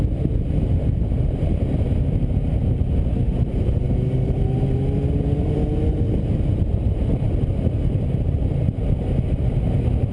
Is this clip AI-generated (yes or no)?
yes